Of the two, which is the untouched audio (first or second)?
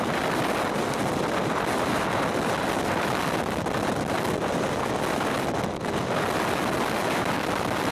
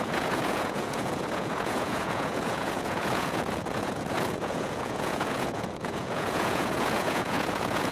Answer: first